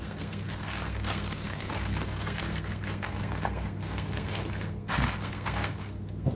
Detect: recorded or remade remade